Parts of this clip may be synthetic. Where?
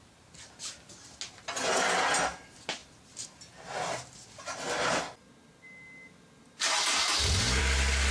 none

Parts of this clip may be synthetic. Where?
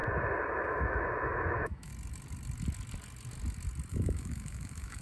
0.5-1.9 (autoencoder, DAC-VAE); 3.9-5.0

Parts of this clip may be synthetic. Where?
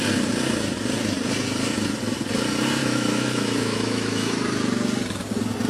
2.8-4.4 (autoencoder, DAC-VAE)